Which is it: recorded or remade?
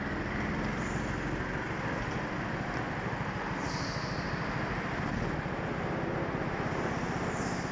recorded